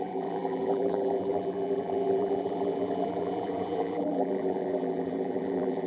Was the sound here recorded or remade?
remade